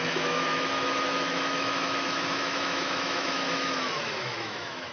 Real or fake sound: fake